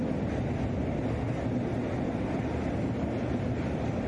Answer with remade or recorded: recorded